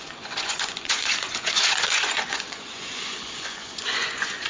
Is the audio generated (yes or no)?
yes